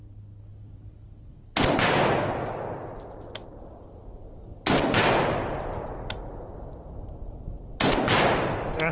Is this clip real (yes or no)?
yes